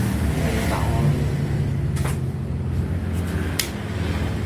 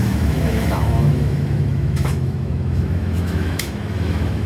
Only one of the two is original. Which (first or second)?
first